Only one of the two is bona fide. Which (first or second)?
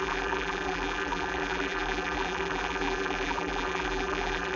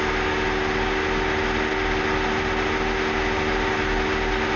second